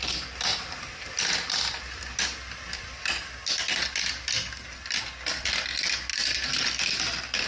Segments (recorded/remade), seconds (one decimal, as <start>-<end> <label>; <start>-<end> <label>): 0.0-6.1 recorded; 6.1-6.7 remade; 6.7-7.5 recorded